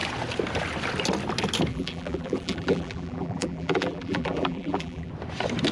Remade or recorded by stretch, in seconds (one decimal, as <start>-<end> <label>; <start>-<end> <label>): 0.0-1.7 recorded; 1.7-5.1 remade; 5.1-5.7 recorded